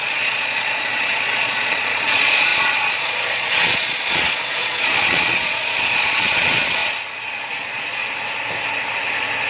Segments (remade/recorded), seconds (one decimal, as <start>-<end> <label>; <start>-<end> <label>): 0.0-6.8 remade; 6.8-7.4 recorded; 7.4-8.0 remade; 8.0-9.5 recorded